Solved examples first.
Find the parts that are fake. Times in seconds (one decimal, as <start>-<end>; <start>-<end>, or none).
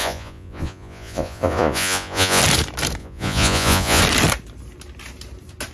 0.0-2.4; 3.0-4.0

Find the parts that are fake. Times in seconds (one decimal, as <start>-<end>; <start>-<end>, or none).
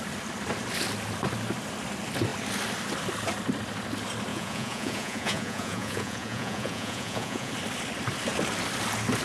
4.3-7.5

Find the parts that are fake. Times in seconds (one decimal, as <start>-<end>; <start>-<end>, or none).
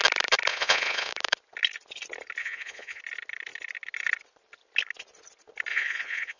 0.5-1.1; 2.4-3.0; 5.7-6.4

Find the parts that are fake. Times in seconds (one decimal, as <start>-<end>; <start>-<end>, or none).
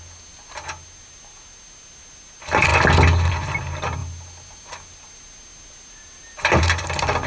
none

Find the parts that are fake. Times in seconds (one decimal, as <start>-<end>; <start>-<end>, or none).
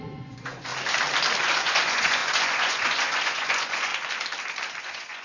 0.0-0.7; 1.4-3.9; 4.8-5.2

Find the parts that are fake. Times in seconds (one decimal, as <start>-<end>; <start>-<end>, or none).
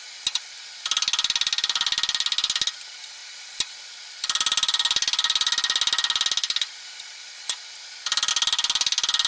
none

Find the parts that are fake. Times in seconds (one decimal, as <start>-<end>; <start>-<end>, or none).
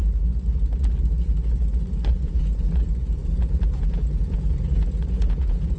2.1-5.8